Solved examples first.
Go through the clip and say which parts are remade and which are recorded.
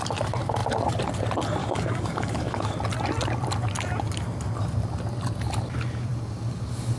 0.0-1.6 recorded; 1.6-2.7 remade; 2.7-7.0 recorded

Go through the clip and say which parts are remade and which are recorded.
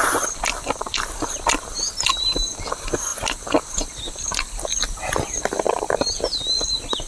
0.0-7.1 recorded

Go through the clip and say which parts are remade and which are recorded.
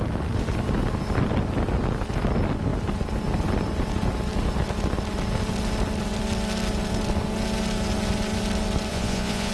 0.0-8.9 recorded; 8.9-9.5 remade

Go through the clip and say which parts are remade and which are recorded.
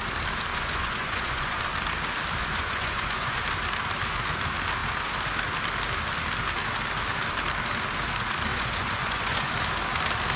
0.0-0.5 recorded; 0.5-1.6 remade; 1.6-2.4 recorded; 2.4-3.4 remade; 3.4-8.5 recorded; 8.5-9.5 remade; 9.5-10.4 recorded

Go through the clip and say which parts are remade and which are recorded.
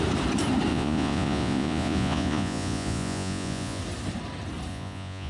0.0-0.7 recorded; 0.7-3.8 remade; 3.8-4.7 recorded; 4.7-5.3 remade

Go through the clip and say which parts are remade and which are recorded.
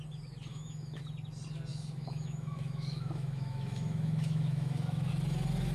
0.0-0.5 recorded; 0.5-1.0 remade; 1.0-1.7 recorded; 1.7-5.1 remade; 5.1-5.7 recorded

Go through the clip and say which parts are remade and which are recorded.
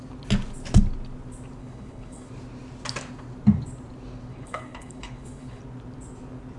0.0-1.6 recorded; 1.6-2.3 remade; 2.3-4.3 recorded; 4.3-5.6 remade; 5.6-6.6 recorded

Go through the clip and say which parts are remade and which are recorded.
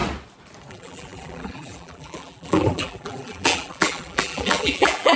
0.0-0.7 recorded; 0.7-5.2 remade